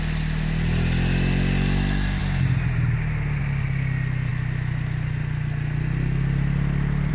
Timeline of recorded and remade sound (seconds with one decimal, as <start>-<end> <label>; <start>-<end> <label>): 0.0-7.1 recorded